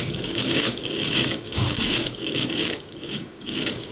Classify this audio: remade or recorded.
remade